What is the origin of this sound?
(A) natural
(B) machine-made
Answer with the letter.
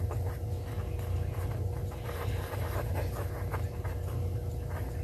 A